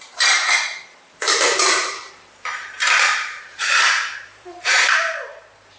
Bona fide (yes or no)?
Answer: no